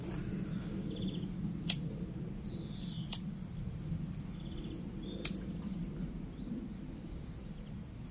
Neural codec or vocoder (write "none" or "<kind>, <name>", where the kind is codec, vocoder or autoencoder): none